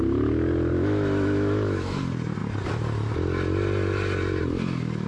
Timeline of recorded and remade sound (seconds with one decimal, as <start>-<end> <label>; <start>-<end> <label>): 0.0-0.7 recorded; 0.7-2.0 remade; 2.0-5.1 recorded